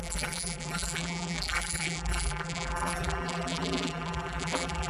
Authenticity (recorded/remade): remade